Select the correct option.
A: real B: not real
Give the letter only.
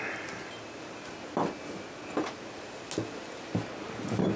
A